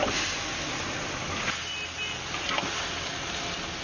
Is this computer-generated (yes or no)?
no